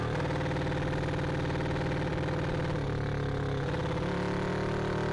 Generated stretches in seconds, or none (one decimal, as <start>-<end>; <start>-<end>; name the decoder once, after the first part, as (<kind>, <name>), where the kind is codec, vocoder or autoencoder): none